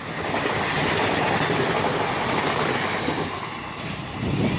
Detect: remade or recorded recorded